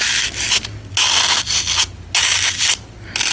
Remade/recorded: recorded